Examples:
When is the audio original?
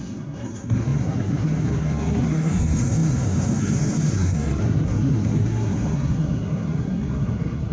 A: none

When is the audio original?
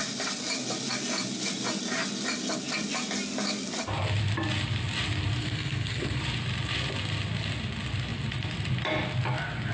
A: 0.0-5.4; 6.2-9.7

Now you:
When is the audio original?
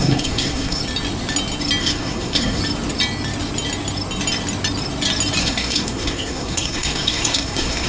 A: 0.8-1.8; 2.6-5.4